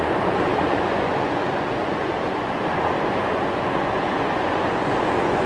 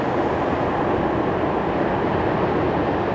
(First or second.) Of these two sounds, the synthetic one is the first